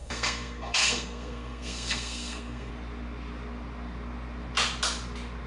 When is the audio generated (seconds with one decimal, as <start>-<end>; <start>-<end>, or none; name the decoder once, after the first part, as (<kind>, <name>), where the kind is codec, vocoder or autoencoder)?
0.0-2.7 (codec, SNAC)